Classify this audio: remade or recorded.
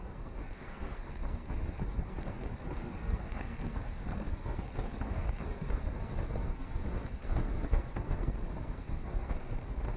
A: remade